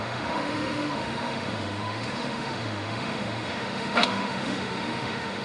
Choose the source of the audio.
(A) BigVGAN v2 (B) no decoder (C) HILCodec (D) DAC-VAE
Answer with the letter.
D